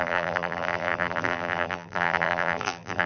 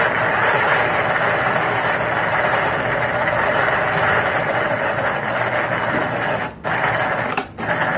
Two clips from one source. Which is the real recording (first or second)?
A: second